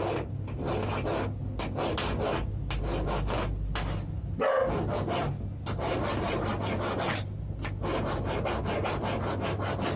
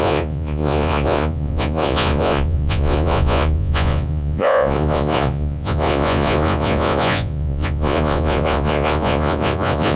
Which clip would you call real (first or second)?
first